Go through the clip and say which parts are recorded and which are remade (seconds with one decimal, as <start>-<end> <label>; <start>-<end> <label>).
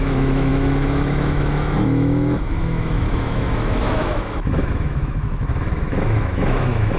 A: 0.0-7.0 remade